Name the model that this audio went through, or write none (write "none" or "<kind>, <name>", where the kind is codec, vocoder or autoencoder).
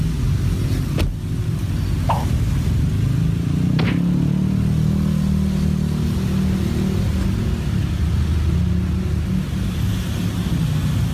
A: none